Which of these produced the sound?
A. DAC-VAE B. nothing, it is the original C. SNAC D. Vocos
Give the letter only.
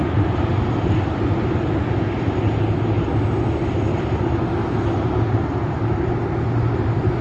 B